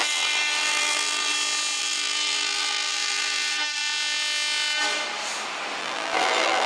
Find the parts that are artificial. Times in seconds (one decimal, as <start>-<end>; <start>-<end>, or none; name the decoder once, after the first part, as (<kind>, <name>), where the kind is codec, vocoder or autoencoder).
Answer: 0.0-1.3 (vocoder, BigVGAN v2); 1.8-3.8; 5.8-6.7

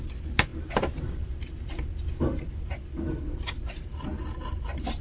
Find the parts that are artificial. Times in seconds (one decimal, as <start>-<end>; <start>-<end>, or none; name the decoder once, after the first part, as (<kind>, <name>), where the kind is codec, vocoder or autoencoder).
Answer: 0.5-3.5 (vocoder, BigVGAN v2)

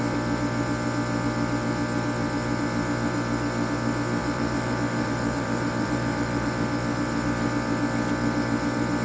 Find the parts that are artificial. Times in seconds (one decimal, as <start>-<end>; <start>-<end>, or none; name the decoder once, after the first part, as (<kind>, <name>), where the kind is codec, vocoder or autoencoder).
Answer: 4.2-6.5 (vocoder, BigVGAN v2)

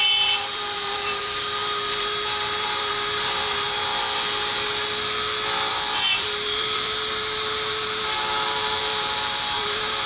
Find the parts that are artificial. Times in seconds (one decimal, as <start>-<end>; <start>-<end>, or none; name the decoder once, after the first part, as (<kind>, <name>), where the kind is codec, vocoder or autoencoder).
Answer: 0.0-3.9 (vocoder, BigVGAN v2); 5.7-10.1

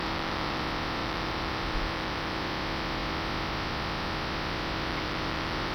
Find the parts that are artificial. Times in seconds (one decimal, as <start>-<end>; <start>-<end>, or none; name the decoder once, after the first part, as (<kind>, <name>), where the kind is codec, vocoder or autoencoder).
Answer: 0.0-0.6 (vocoder, BigVGAN v2); 1.0-2.4; 4.9-5.7

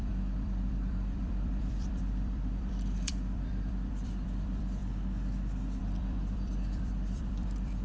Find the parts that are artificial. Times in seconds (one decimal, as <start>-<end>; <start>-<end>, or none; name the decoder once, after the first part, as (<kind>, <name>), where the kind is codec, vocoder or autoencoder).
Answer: 0.0-4.8 (vocoder, BigVGAN v2); 5.8-7.8

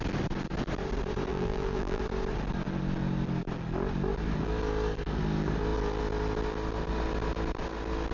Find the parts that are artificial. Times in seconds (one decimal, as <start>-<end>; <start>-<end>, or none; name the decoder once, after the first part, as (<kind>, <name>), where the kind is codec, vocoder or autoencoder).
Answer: 1.3-2.0 (vocoder, BigVGAN v2)